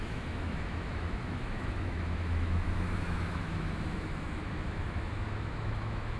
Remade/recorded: remade